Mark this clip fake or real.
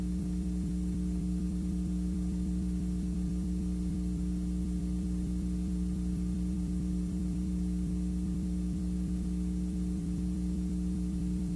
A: fake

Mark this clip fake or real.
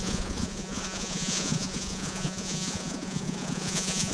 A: fake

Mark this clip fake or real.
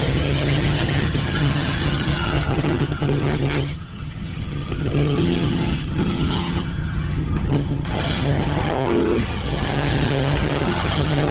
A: fake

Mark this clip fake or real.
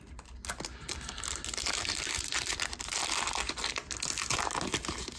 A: real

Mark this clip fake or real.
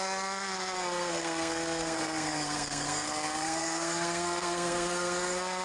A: fake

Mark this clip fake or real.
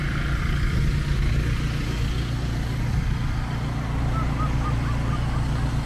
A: real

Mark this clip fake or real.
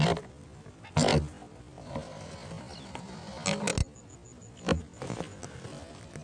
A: real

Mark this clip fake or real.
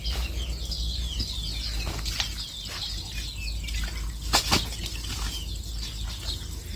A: real